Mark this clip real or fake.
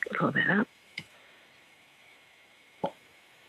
fake